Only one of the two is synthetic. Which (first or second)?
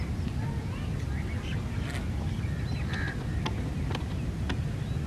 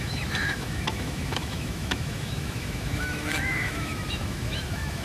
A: second